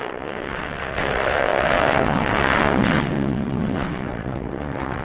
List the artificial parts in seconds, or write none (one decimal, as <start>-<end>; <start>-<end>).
0.0-5.0